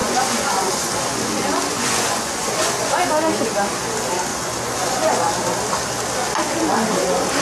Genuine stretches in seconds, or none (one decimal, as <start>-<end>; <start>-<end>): 2.9-4.3; 5.3-7.4

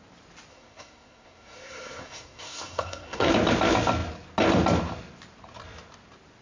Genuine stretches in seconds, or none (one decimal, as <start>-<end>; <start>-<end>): 0.0-0.5; 3.3-6.4

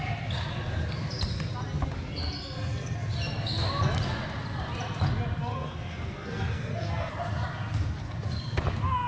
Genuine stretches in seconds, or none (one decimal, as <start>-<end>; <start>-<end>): 0.0-5.5; 7.1-9.1

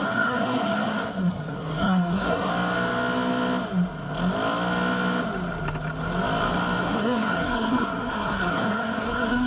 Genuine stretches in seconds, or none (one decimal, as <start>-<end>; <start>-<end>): 2.5-6.8